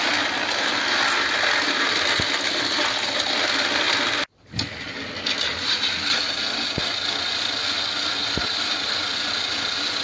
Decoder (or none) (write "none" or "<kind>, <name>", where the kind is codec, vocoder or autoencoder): none